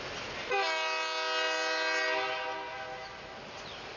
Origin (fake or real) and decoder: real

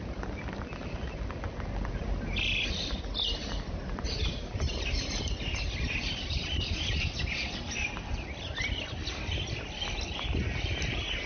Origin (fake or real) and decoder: real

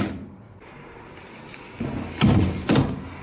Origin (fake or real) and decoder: real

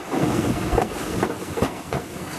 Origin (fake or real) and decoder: fake, codec, SNAC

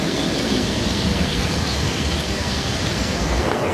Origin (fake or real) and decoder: fake, codec, SNAC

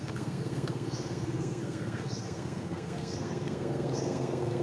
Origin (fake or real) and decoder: fake, codec, SNAC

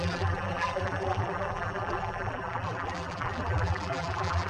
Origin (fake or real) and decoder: fake, vocoder, BigVGAN v2